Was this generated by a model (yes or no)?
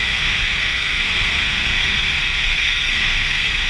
yes